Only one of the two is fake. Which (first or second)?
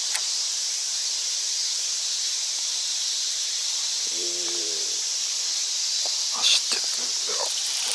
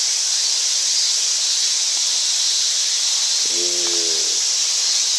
first